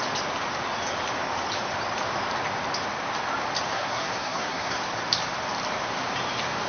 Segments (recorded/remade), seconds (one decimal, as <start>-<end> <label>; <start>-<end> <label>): 0.0-3.7 recorded; 3.7-4.8 remade; 4.8-6.7 recorded